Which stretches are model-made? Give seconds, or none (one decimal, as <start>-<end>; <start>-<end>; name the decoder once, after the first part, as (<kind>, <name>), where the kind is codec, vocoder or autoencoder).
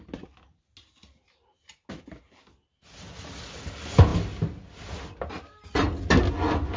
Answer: none